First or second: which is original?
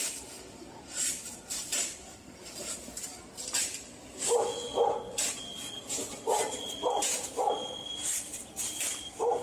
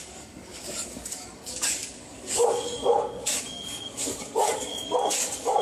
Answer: first